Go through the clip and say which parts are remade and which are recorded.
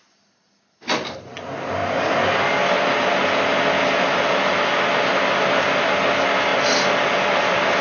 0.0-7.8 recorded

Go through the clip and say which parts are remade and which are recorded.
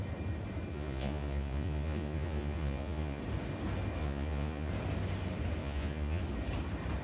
0.0-0.7 recorded; 0.7-3.2 remade; 3.2-4.0 recorded; 4.0-4.7 remade; 4.7-5.6 recorded; 5.6-6.2 remade; 6.2-7.0 recorded